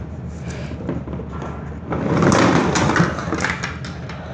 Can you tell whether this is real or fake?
real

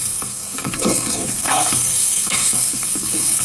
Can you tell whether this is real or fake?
fake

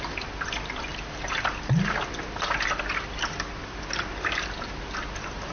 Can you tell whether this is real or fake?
real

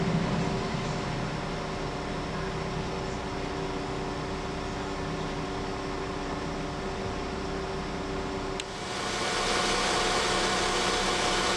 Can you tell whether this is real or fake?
real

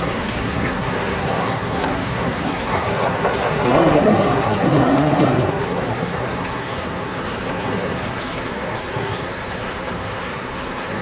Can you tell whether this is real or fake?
fake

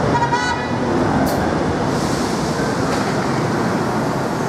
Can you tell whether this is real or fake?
real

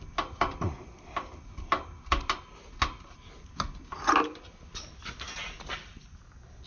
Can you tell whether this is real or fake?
real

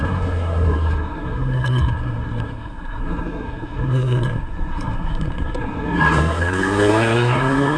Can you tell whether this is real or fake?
fake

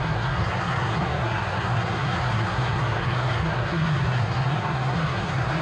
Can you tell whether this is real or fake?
fake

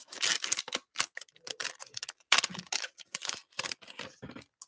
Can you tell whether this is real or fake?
real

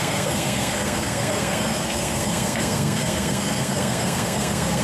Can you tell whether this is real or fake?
fake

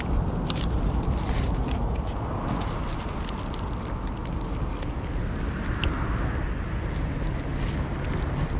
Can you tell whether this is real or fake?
real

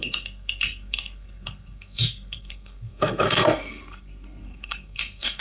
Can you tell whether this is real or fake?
fake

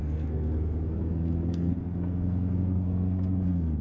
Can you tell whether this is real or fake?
fake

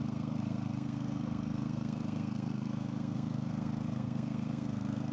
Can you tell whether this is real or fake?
fake